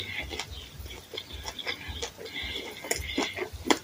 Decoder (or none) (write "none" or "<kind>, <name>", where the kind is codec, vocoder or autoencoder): none